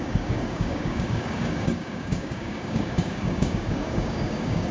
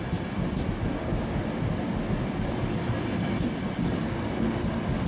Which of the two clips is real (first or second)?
second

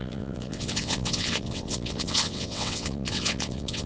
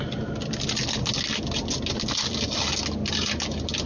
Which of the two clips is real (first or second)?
second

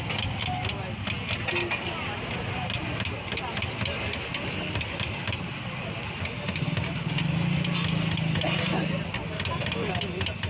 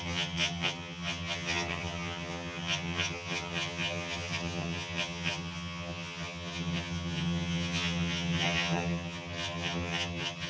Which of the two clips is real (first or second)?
first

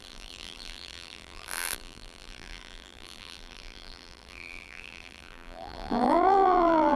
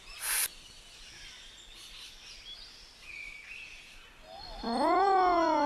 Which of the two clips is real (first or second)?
second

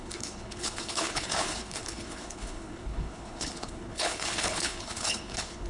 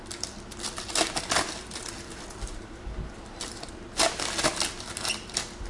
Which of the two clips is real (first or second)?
second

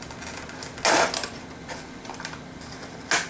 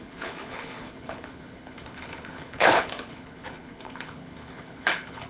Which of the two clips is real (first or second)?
first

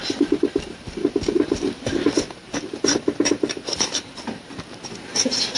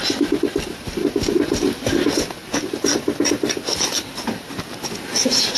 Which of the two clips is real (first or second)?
second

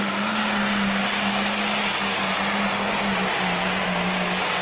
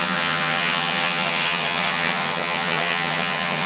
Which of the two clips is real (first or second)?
first